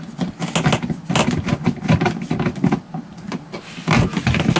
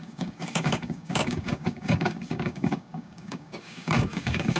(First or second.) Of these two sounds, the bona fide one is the first